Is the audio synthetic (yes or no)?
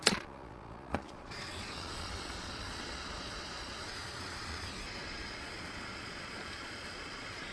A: yes